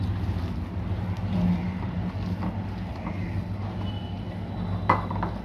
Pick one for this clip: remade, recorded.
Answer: recorded